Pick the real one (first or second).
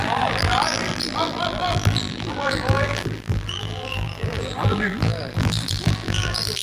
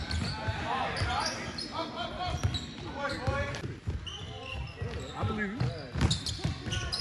second